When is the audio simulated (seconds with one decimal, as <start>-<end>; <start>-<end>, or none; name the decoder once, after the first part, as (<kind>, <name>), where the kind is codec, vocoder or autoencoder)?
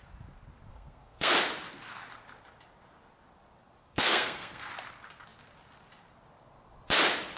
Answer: 0.7-1.3 (codec, SNAC); 3.8-4.7